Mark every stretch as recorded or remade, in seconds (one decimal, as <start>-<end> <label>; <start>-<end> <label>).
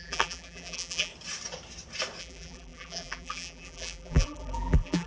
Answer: 0.0-1.1 remade; 1.1-2.2 recorded; 2.2-5.1 remade